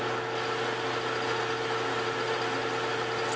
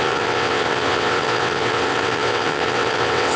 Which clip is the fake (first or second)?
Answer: second